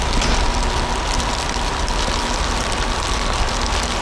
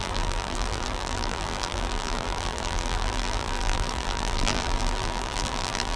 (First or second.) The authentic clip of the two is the first